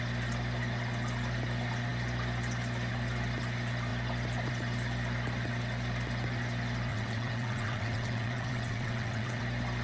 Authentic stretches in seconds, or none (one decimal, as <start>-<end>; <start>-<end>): 0.0-6.9; 9.4-9.8